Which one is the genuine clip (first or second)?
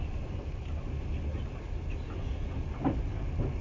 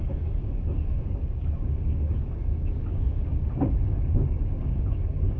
first